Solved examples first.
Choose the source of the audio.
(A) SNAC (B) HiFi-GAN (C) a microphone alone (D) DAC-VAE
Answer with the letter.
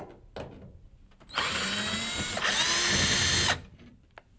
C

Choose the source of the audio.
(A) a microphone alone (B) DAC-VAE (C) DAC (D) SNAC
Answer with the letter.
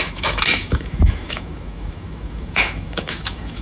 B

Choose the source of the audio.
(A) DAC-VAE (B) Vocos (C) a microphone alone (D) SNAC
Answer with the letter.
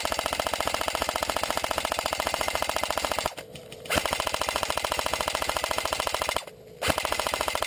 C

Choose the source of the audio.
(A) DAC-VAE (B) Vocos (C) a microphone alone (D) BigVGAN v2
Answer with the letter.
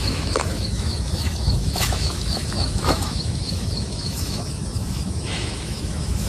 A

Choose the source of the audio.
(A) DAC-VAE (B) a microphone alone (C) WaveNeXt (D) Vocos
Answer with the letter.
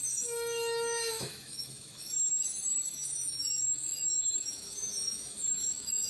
A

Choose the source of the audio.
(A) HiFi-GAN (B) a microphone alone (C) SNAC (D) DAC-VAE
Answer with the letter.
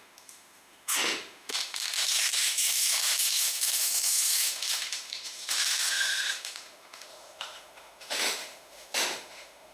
D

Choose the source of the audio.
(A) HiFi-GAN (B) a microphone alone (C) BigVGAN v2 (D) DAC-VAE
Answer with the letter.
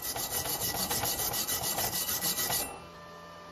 B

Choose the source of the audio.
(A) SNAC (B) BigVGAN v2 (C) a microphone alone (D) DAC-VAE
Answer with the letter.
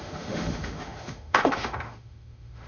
D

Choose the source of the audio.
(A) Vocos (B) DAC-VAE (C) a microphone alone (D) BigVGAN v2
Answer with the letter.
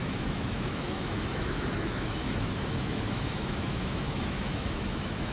B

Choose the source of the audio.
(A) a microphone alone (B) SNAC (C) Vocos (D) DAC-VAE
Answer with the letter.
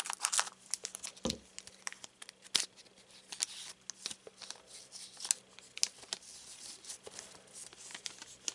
A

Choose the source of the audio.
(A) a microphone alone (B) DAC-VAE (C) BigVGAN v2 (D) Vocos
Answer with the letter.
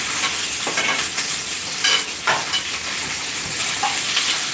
A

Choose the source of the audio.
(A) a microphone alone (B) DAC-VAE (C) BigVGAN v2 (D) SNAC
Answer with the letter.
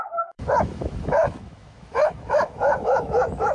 B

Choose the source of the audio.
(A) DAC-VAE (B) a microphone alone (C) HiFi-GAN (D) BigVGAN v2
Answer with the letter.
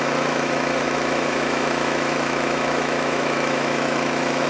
A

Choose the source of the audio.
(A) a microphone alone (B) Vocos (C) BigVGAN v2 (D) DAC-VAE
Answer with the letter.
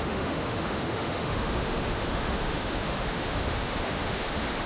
D